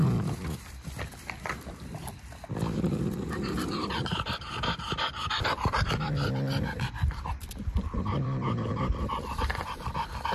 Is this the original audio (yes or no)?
no